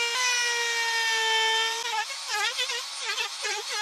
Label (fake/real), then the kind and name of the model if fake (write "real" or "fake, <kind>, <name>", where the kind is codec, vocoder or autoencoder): real